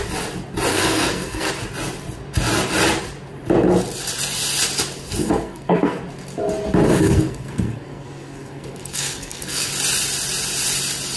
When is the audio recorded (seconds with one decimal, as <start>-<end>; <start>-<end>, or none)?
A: 0.0-0.7; 1.5-5.2; 6.0-6.9; 9.7-11.2